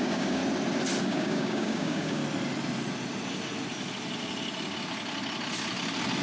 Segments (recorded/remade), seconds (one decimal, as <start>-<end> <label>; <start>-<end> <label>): 0.0-0.4 remade; 0.4-1.0 recorded; 1.0-2.2 remade; 2.2-6.2 recorded